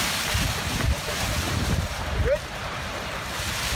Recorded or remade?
remade